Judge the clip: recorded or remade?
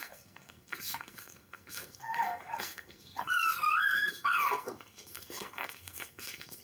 remade